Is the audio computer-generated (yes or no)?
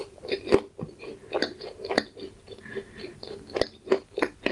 no